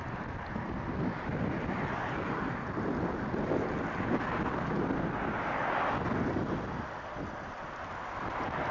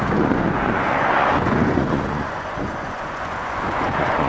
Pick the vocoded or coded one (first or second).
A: second